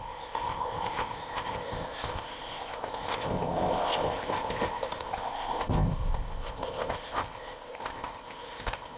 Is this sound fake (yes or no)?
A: yes